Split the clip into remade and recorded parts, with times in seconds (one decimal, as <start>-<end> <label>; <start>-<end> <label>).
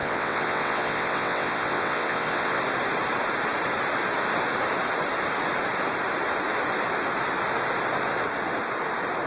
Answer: 0.0-2.6 remade; 2.6-9.3 recorded